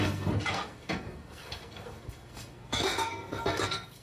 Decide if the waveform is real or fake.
fake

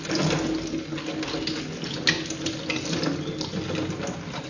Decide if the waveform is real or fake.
real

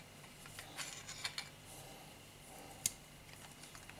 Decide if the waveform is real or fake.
real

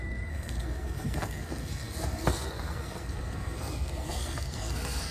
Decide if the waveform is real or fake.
fake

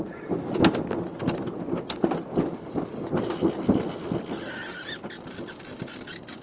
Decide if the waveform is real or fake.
real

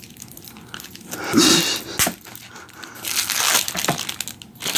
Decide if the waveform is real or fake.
real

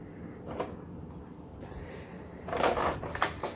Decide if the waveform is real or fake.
real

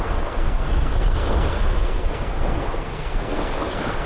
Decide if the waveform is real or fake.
fake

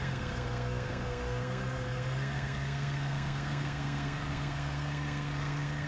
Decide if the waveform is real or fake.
fake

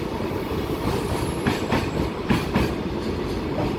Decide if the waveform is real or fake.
real